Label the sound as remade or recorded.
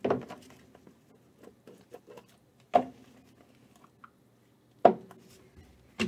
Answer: recorded